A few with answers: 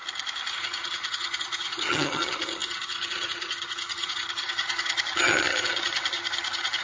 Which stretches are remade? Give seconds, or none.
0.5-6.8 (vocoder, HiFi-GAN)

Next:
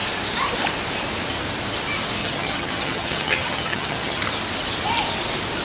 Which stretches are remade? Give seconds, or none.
2.2-4.2 (vocoder, HiFi-GAN)

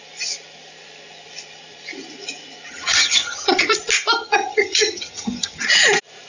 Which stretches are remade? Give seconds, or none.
2.7-3.6 (vocoder, HiFi-GAN); 4.2-5.6